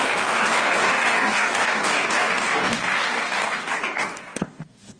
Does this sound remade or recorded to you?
remade